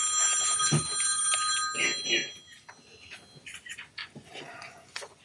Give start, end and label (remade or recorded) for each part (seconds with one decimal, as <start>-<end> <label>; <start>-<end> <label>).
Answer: 0.0-4.0 recorded; 4.0-5.2 remade